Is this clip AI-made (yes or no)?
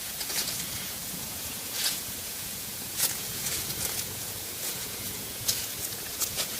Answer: yes